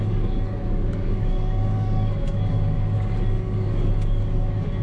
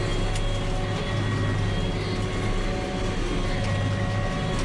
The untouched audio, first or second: second